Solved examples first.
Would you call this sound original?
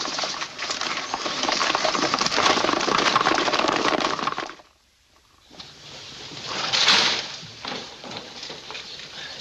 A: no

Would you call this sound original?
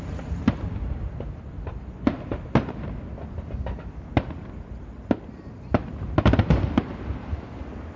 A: yes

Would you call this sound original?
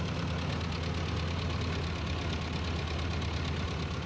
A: yes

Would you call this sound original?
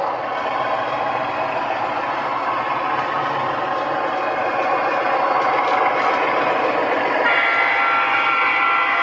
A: yes